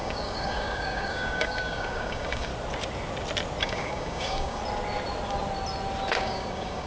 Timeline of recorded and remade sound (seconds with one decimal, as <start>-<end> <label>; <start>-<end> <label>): 0.0-2.5 remade; 2.5-3.6 recorded; 3.6-4.6 remade; 4.6-6.2 recorded; 6.2-6.9 remade